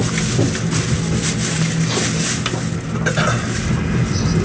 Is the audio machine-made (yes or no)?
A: no